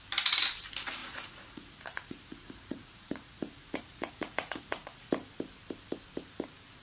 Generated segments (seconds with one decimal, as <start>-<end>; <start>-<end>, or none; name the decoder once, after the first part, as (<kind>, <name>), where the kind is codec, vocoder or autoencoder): 1.0-5.1 (vocoder, Vocos)